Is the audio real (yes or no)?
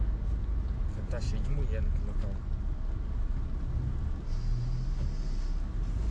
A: yes